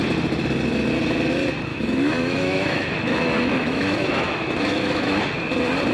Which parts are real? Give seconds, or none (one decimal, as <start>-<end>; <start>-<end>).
0.0-1.7; 5.2-5.9